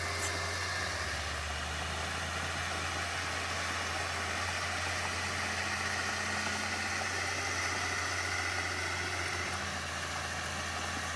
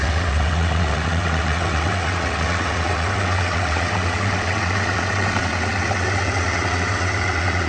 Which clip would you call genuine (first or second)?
first